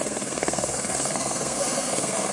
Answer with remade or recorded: remade